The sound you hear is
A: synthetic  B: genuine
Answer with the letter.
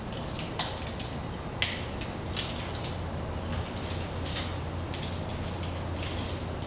B